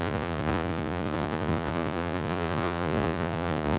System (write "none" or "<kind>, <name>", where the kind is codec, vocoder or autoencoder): vocoder, Vocos